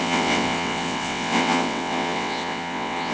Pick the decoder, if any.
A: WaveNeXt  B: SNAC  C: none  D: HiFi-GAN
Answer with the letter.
A